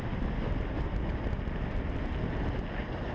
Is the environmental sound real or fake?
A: real